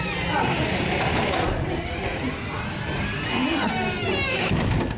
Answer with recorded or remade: recorded